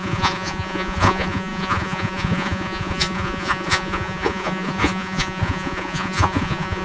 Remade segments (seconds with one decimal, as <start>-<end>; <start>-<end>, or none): 0.0-6.8